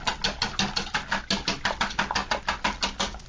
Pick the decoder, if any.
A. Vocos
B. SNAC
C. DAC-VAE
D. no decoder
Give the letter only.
D